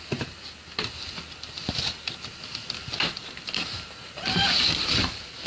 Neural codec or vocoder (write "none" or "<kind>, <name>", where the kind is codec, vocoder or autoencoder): vocoder, BigVGAN v2